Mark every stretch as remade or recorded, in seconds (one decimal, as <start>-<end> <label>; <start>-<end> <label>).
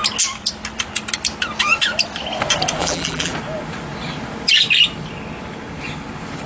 0.0-2.8 recorded; 2.8-3.3 remade; 3.3-6.5 recorded